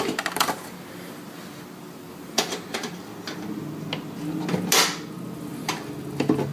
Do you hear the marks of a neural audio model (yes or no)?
no